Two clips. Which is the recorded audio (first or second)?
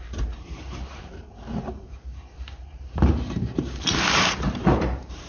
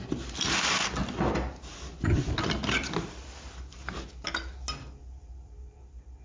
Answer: second